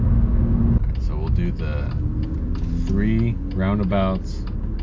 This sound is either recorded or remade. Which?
recorded